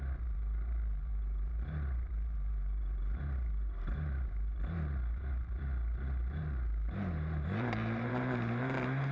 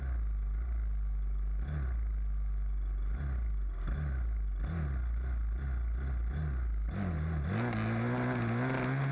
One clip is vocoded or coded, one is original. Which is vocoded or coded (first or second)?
first